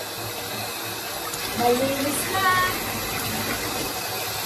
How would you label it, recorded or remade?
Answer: recorded